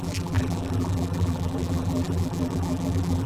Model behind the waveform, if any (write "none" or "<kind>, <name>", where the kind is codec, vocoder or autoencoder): vocoder, BigVGAN v2